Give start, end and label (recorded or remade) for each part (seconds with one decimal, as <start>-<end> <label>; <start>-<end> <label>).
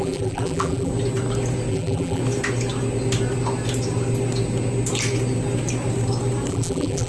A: 0.0-0.9 remade; 0.9-1.7 recorded; 1.7-2.2 remade; 2.2-6.5 recorded; 6.5-7.1 remade